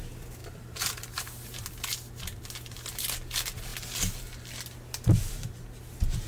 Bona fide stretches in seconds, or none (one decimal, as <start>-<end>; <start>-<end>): 0.0-0.4; 1.2-6.3